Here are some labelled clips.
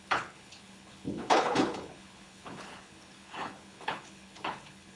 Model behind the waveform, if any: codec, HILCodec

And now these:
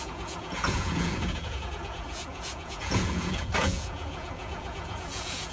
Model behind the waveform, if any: vocoder, Vocos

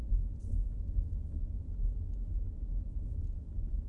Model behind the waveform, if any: none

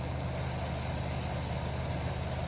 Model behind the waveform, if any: none